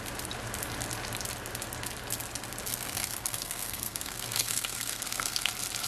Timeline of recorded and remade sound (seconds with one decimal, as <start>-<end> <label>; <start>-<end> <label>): 0.0-2.7 recorded; 2.7-5.5 remade; 5.5-5.9 recorded